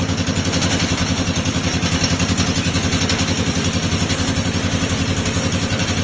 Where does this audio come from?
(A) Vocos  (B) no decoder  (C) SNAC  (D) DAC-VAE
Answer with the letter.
B